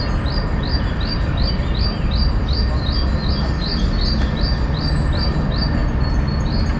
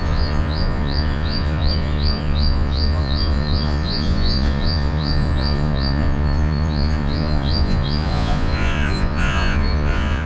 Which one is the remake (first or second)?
second